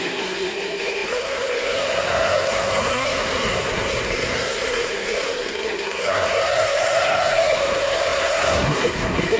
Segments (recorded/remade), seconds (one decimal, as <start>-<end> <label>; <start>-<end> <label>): 0.0-9.4 remade